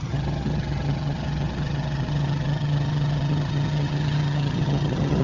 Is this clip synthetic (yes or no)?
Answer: yes